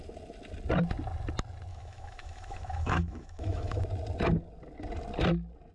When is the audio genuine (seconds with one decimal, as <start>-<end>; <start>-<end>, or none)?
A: 0.0-1.7; 3.8-5.7